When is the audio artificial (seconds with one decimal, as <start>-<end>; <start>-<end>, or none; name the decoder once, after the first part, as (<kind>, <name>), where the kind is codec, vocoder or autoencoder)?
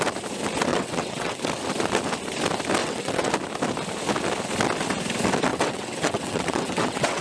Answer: 0.7-1.4 (vocoder, WaveNeXt); 2.8-3.3; 5.5-7.2